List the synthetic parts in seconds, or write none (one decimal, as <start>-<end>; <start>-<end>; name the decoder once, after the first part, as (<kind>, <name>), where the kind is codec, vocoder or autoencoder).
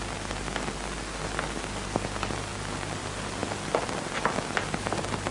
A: none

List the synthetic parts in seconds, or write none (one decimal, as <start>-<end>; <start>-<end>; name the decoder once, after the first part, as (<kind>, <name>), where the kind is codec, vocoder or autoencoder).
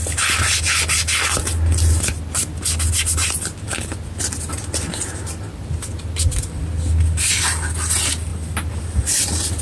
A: none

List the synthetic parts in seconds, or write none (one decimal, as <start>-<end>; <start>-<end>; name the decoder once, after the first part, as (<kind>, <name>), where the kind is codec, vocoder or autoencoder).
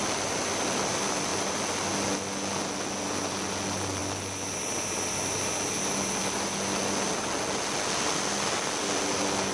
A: none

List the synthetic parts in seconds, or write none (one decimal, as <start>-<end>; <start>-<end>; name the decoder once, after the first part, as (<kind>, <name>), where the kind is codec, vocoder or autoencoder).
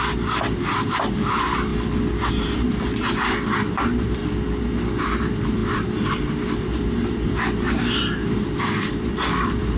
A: 0.0-1.7 (vocoder, BigVGAN v2); 2.3-4.2; 5.0-9.8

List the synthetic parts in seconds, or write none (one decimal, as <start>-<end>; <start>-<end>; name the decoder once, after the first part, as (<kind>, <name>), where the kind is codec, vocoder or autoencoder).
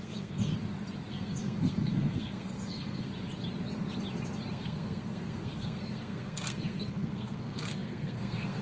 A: 0.0-0.5 (codec, SNAC); 1.1-3.1; 4.5-8.6